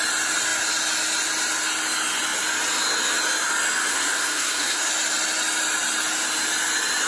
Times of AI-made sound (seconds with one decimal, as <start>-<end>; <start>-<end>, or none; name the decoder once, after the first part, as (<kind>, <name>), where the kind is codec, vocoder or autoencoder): 3.9-4.9 (codec, SNAC)